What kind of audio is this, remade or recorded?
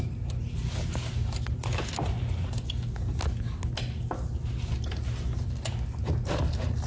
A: recorded